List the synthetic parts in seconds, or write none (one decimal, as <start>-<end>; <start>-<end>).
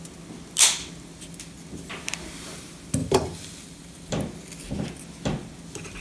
3.0-4.1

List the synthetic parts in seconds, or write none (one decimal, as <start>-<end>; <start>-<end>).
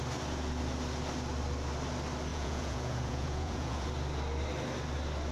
2.3-3.9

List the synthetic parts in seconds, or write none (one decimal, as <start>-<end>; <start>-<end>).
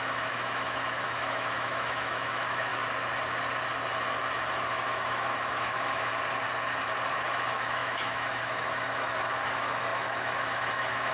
0.0-2.7; 4.5-6.1; 7.1-11.1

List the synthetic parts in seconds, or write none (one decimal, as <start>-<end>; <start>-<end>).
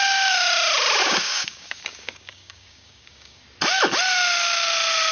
1.0-3.4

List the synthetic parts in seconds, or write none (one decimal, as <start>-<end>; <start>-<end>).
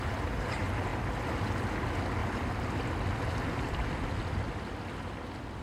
none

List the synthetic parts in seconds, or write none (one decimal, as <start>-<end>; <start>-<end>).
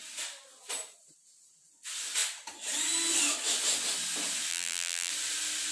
4.5-5.1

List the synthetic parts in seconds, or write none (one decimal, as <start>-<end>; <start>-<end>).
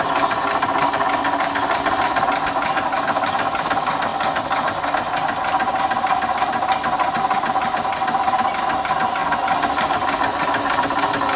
none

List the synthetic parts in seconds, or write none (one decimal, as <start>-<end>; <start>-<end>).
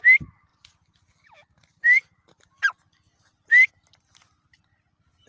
none